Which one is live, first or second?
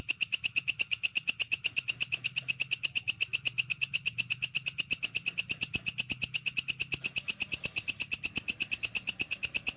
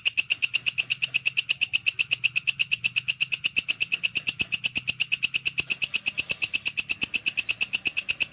second